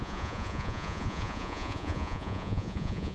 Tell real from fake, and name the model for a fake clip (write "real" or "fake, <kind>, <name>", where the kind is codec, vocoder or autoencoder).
fake, vocoder, Vocos